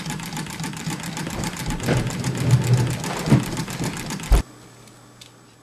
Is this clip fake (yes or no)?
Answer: yes